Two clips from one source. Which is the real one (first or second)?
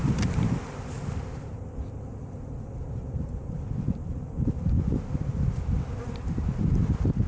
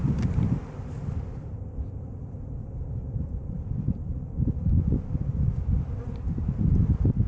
first